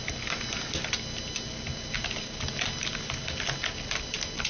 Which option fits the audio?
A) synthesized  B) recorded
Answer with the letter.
B